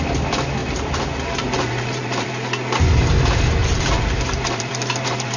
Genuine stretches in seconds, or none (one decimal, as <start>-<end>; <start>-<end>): 0.0-0.6; 2.3-3.6